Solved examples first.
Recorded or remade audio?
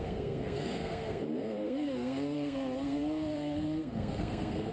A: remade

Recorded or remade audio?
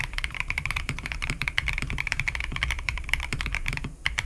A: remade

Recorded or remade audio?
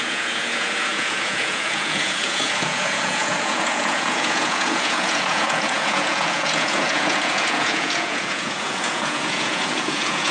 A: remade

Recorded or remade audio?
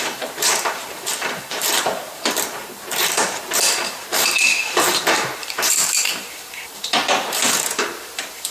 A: remade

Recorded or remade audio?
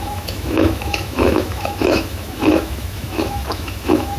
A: remade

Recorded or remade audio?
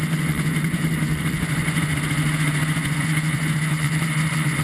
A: remade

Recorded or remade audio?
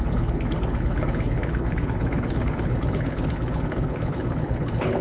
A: remade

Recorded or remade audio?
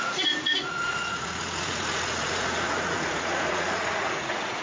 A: remade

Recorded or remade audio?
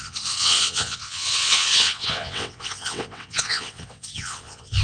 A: remade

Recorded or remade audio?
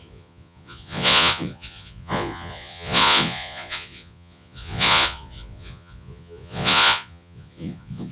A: remade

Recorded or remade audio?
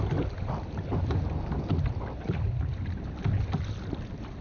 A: recorded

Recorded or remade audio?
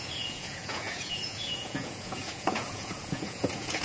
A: remade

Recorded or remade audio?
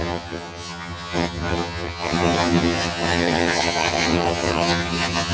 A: remade